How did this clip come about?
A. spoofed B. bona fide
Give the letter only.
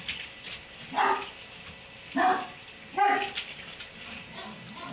B